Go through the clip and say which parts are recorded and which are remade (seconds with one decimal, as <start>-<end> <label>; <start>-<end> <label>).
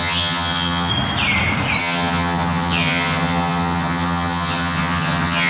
0.0-0.9 remade; 0.9-1.8 recorded; 1.8-5.5 remade